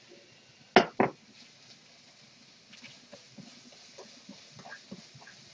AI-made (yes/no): no